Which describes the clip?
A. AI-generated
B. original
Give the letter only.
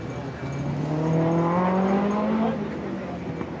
B